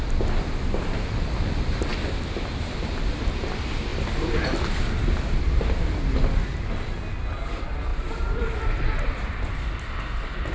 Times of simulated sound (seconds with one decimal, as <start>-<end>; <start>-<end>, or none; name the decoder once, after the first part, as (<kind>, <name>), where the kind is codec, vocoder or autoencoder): 7.9-9.6 (vocoder, BigVGAN v2)